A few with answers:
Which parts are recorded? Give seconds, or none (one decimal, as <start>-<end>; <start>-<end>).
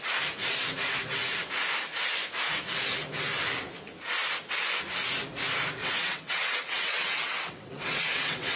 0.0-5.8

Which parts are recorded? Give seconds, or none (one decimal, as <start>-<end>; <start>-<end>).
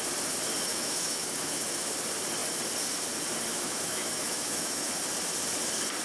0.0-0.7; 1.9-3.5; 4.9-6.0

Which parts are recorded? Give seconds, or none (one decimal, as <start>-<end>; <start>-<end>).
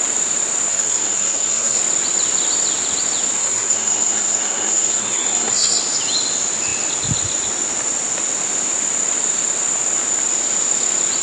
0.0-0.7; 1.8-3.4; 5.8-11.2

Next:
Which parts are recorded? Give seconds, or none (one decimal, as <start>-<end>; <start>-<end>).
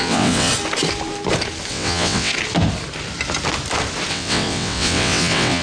0.5-1.7; 2.3-4.1